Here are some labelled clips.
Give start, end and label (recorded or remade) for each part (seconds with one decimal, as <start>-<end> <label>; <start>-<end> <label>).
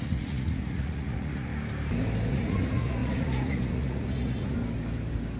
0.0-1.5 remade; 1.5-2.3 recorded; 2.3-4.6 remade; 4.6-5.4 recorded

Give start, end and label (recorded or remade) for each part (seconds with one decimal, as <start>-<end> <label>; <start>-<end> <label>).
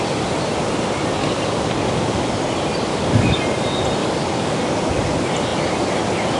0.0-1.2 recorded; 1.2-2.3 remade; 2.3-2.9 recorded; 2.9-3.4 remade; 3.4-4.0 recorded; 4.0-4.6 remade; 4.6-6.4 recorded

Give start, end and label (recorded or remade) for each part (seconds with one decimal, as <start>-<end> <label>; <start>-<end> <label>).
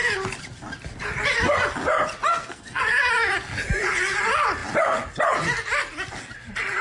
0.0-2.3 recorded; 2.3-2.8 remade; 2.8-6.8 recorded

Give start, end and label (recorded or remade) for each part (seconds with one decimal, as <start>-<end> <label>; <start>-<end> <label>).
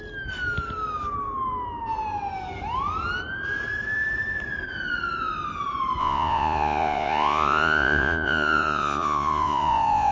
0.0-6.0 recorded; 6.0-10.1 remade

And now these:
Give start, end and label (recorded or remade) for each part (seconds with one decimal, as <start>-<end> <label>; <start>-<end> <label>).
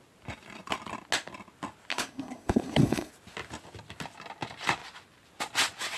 0.0-1.9 recorded; 1.9-3.1 remade; 3.1-6.0 recorded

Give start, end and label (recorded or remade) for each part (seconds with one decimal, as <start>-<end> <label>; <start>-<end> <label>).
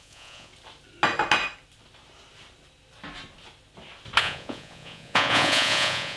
0.0-0.5 remade; 0.5-4.2 recorded; 4.2-6.2 remade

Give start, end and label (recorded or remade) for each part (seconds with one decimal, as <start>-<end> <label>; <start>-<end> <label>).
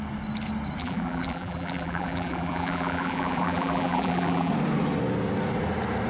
0.0-0.8 recorded; 0.8-4.5 remade; 4.5-6.1 recorded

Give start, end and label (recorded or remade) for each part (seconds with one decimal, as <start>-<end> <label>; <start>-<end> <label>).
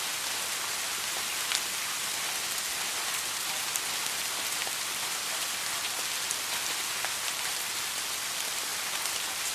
0.0-4.6 recorded; 4.6-5.5 remade; 5.5-8.7 recorded; 8.7-9.5 remade